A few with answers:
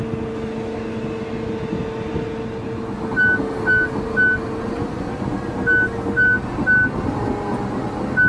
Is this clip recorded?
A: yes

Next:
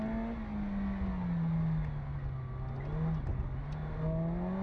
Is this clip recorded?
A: yes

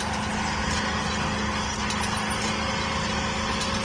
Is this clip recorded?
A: yes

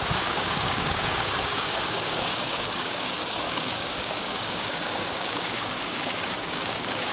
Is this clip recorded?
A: no